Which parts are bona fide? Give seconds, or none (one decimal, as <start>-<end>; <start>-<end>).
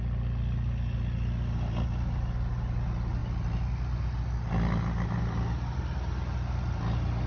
0.0-7.3